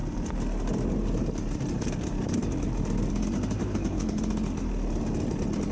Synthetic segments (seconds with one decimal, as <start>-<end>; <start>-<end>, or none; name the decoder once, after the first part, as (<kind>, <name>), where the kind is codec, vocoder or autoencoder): 3.6-4.2 (codec, HILCodec)